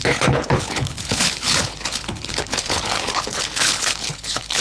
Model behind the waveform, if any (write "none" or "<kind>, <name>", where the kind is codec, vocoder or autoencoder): codec, HILCodec